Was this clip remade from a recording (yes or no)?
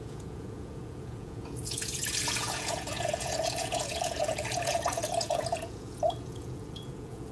yes